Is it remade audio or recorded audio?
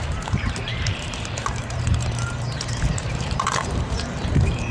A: remade